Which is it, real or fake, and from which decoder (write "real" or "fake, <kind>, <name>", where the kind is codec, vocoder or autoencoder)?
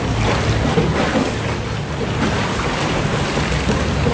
real